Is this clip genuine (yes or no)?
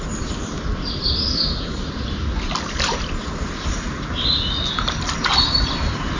yes